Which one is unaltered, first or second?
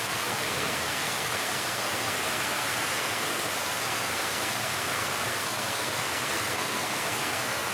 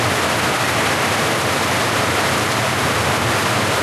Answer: second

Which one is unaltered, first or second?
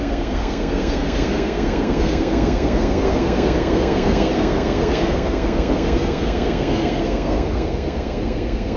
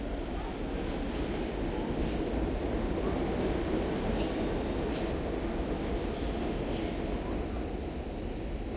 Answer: second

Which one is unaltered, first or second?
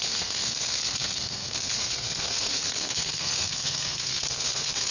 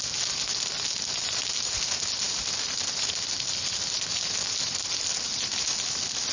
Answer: second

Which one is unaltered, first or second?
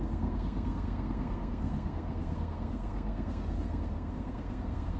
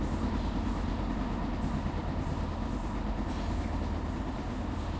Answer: second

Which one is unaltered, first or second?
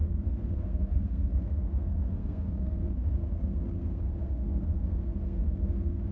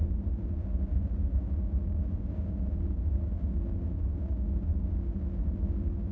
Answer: second